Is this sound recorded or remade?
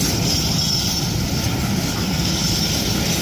recorded